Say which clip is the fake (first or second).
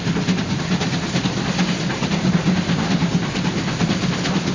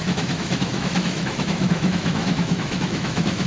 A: second